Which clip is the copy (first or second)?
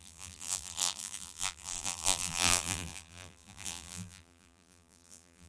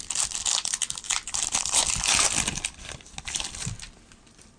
first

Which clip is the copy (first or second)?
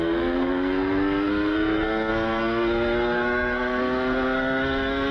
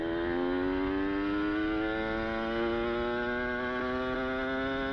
first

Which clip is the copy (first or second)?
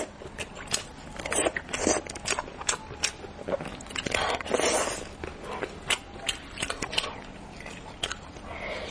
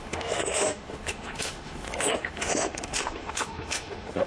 second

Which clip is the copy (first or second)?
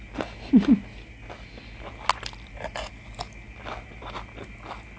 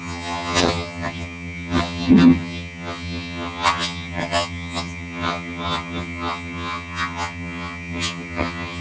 second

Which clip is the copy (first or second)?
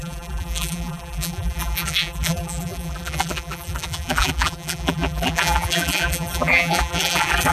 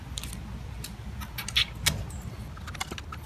first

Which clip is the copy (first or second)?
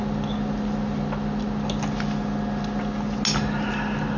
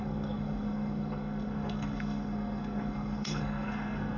second